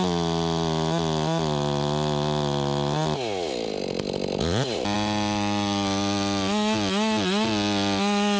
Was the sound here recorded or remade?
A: recorded